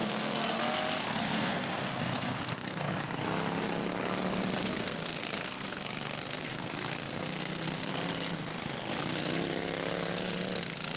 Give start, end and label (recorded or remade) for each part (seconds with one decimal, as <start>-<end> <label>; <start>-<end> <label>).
0.0-0.6 remade; 0.6-1.2 recorded; 1.2-2.9 remade; 2.9-4.6 recorded; 4.6-7.9 remade; 7.9-11.0 recorded